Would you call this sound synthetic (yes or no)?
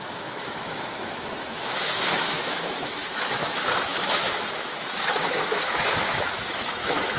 yes